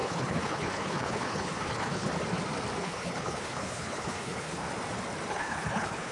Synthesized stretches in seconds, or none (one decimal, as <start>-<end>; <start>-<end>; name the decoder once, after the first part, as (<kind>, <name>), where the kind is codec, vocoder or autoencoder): 0.0-2.1 (codec, HILCodec); 2.8-4.6; 5.3-6.1